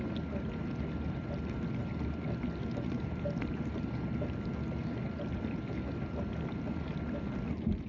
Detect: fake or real real